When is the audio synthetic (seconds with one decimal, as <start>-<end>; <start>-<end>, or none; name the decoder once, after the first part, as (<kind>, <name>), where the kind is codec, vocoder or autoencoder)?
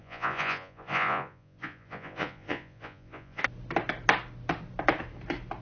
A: 0.0-3.4 (vocoder, Vocos)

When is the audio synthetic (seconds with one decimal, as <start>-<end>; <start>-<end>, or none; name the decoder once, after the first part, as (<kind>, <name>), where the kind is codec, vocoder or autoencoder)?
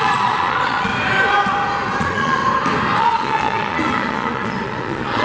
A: 0.0-0.9 (vocoder, Vocos); 2.0-2.4; 3.0-5.2